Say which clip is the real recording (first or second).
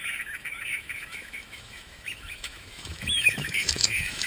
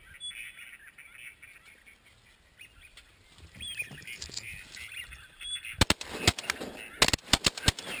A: second